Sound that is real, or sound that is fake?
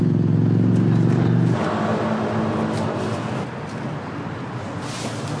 real